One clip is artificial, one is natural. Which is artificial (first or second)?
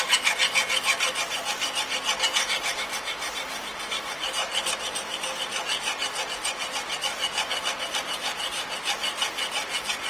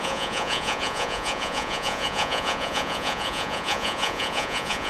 second